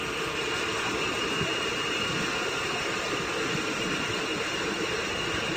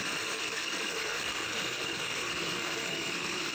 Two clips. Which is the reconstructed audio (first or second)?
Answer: second